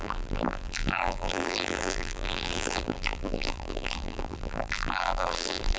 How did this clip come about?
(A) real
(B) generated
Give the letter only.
B